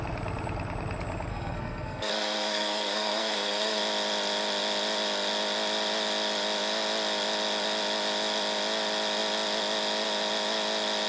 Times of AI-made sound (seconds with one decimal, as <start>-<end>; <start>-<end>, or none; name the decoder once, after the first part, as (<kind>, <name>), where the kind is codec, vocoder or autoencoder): 1.3-3.8 (codec, SNAC)